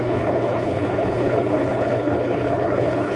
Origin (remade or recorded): remade